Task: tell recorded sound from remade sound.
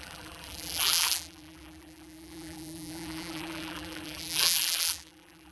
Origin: remade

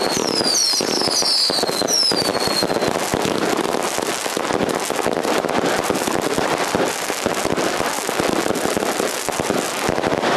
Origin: recorded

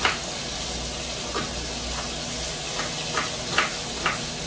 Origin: recorded